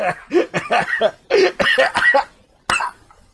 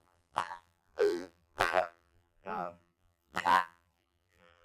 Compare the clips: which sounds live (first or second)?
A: first